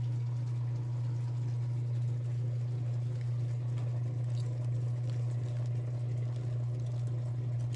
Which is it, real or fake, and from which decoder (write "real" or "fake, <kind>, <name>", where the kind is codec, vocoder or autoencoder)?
real